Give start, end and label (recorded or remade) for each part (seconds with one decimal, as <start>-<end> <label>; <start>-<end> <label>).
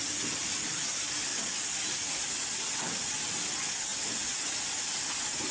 0.0-5.5 recorded